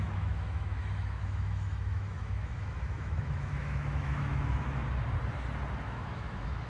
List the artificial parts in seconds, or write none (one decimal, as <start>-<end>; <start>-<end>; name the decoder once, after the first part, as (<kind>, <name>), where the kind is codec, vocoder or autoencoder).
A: 0.0-4.8 (autoencoder, DAC-VAE); 5.8-6.7